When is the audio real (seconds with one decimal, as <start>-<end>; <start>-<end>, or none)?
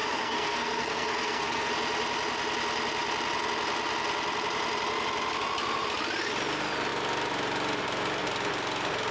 1.7-9.1